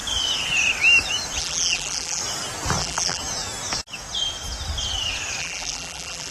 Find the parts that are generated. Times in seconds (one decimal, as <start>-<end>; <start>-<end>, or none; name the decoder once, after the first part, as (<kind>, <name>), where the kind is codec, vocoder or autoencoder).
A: 1.4-2.2 (vocoder, BigVGAN v2); 2.8-3.2; 5.4-6.3

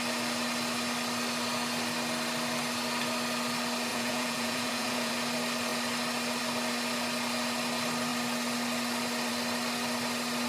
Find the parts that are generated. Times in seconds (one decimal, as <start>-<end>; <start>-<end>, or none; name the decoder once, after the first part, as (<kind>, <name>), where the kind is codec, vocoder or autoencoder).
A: 3.9-5.1 (vocoder, Vocos)

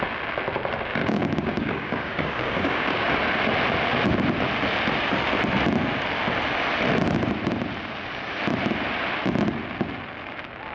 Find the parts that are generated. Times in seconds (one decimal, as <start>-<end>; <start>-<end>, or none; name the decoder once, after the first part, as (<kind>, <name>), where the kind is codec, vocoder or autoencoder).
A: 1.0-3.1 (codec, DAC)

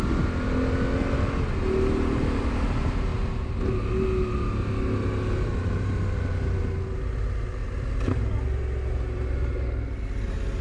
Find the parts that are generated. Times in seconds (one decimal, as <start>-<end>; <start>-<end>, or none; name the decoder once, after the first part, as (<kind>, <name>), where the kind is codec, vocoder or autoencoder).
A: none

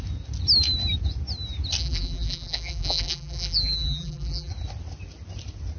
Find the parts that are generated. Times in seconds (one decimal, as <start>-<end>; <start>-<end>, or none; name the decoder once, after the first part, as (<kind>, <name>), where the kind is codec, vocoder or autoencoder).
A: 1.8-4.5 (vocoder, BigVGAN v2)

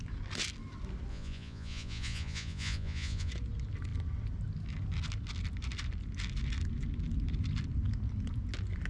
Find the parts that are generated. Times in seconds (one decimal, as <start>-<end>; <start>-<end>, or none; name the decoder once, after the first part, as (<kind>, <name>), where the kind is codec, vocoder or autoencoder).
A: 1.1-3.3 (vocoder, Vocos)

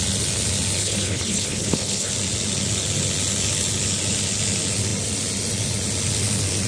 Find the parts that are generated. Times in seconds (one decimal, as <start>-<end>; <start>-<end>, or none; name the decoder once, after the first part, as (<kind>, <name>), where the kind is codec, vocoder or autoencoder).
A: 0.8-2.1 (codec, HILCodec)